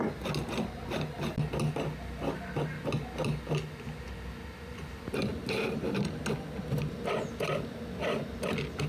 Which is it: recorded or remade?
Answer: recorded